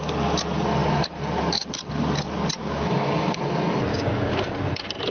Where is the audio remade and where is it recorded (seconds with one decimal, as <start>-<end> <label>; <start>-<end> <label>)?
0.0-2.6 recorded; 2.6-3.4 remade; 3.4-3.9 recorded; 3.9-4.6 remade; 4.6-5.1 recorded